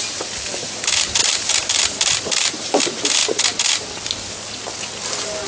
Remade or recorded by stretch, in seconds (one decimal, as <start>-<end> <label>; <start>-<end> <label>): 0.0-1.2 recorded; 1.2-2.8 remade; 2.8-5.5 recorded